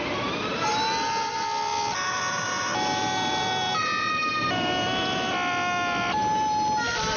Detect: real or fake real